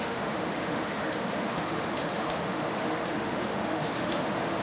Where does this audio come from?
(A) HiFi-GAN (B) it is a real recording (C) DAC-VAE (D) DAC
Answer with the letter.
C